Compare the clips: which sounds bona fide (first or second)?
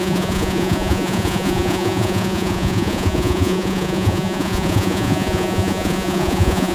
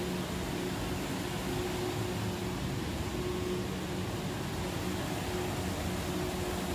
second